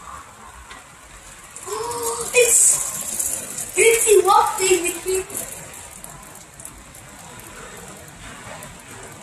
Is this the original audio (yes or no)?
yes